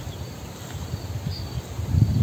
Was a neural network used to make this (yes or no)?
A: no